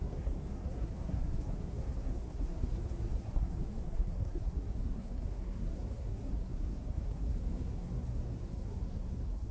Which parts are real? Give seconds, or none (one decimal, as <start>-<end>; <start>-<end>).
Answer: none